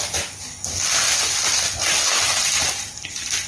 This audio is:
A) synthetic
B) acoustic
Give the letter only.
B